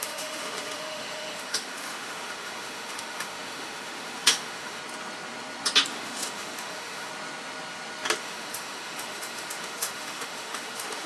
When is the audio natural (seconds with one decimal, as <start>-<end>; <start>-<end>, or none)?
4.8-5.9; 7.1-8.2